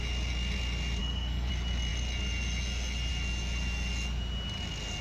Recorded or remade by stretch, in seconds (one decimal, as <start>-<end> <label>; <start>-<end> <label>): 0.0-1.0 recorded; 1.0-1.5 remade; 1.5-5.0 recorded